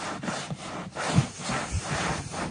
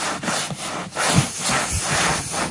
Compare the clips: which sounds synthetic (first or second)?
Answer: first